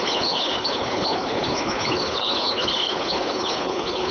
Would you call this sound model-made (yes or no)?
yes